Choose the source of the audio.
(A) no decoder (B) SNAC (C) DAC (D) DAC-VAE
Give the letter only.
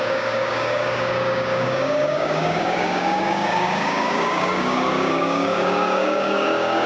C